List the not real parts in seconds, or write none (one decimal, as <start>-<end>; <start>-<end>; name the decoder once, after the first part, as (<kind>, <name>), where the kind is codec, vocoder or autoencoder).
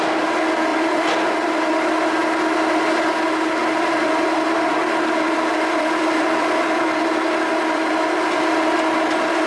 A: 0.7-1.7 (vocoder, BigVGAN v2); 3.6-7.9